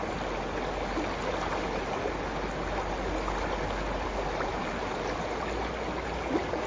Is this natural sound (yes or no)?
yes